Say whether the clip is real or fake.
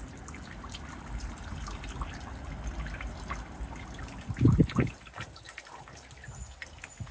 real